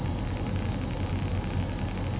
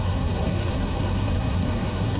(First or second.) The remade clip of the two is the second